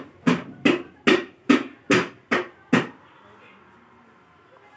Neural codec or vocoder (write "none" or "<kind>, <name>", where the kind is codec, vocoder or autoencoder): none